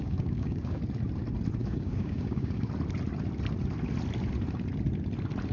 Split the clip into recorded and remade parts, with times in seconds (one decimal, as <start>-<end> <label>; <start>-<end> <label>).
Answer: 0.0-0.8 remade; 0.8-1.6 recorded; 1.6-2.7 remade; 2.7-5.5 recorded